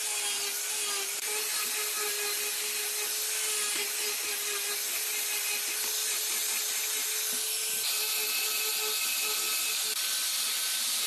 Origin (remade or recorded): recorded